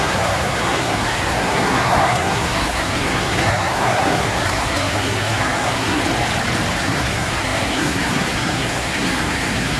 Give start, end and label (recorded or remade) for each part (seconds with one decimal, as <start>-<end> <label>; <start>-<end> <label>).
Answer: 0.0-6.0 remade; 6.0-6.8 recorded; 6.8-9.8 remade